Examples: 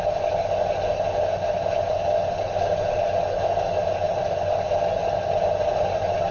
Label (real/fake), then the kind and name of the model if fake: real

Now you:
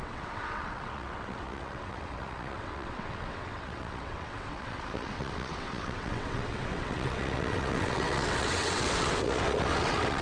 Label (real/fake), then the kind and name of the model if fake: fake, vocoder, WaveNeXt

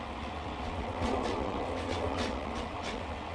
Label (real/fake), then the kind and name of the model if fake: fake, vocoder, WaveNeXt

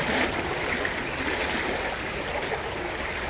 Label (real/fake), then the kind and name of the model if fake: real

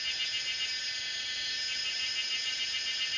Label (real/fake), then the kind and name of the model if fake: real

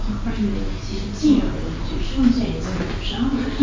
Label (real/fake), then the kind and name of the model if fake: real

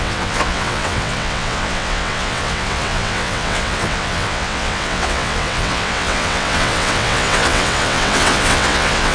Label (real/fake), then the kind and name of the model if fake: fake, vocoder, WaveNeXt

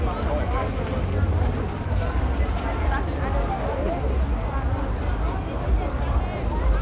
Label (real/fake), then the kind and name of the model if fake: real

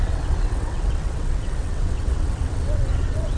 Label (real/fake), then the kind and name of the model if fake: fake, vocoder, WaveNeXt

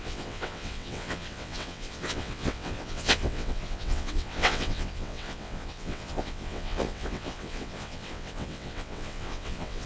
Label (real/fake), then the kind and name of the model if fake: fake, vocoder, WaveNeXt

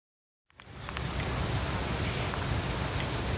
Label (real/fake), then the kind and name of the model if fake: real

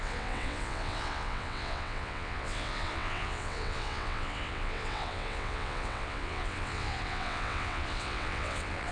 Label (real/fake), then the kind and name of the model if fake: fake, vocoder, WaveNeXt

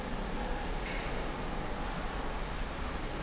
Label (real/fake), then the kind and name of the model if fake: real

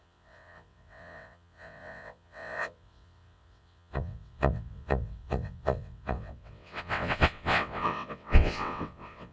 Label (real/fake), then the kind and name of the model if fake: fake, vocoder, WaveNeXt